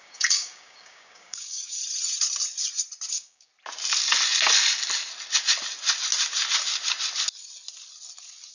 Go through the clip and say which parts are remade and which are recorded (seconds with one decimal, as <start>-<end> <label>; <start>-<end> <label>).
0.0-1.8 remade; 1.8-3.1 recorded; 3.1-3.5 remade; 3.5-8.5 recorded